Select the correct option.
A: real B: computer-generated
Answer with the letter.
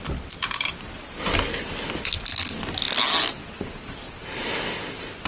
A